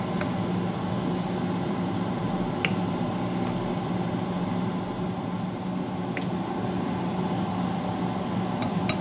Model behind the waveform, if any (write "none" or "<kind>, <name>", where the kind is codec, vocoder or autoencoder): none